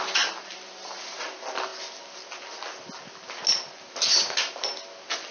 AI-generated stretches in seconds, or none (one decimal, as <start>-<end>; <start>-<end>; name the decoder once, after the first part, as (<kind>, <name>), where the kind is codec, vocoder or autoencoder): none